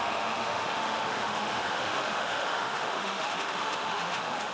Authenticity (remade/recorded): remade